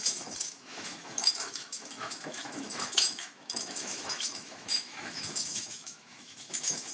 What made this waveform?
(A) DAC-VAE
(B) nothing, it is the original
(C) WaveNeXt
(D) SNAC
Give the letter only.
A